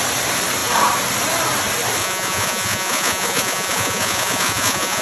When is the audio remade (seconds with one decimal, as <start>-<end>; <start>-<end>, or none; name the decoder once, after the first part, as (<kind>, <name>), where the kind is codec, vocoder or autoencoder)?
2.0-5.0 (vocoder, Vocos)